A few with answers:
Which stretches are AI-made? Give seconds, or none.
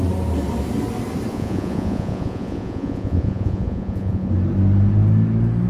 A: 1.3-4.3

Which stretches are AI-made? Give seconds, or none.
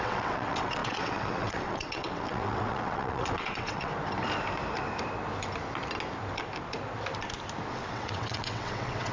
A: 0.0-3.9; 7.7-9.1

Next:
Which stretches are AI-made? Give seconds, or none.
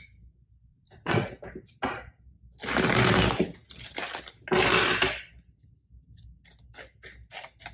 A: 0.7-1.3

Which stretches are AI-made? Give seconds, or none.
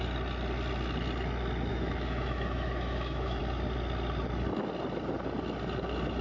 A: 1.7-3.4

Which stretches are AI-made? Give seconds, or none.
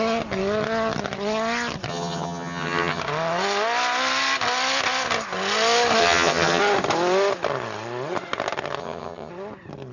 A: 1.9-3.0; 6.0-6.6; 8.8-9.3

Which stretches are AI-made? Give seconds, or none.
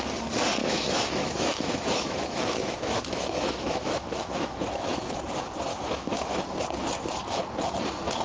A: 0.6-5.2; 5.7-6.4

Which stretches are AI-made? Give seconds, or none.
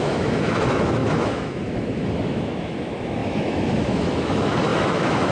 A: 0.0-5.3